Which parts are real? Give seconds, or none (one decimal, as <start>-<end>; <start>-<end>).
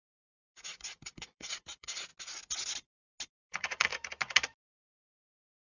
2.1-3.5; 3.9-4.8